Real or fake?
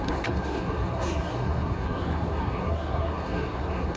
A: fake